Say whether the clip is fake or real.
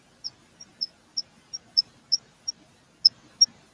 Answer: real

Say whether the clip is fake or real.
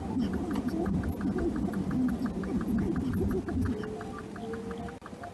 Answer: real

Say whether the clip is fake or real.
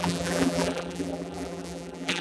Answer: fake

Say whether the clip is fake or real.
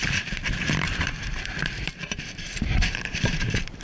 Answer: fake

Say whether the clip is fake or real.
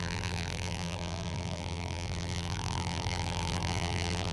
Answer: fake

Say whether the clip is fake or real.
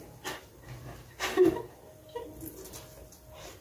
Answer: real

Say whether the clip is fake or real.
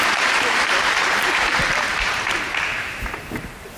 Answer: fake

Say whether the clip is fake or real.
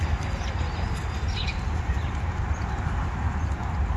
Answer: fake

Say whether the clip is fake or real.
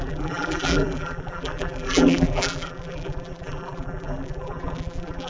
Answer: fake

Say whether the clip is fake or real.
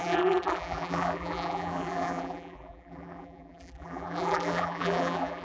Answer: fake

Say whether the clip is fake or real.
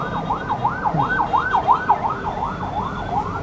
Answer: real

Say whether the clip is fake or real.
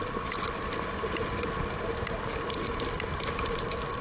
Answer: real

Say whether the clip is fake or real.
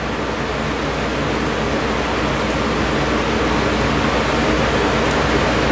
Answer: real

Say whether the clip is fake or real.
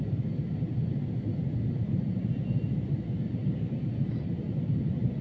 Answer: real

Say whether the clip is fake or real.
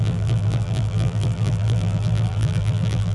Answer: fake